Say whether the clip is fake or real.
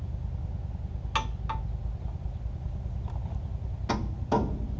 real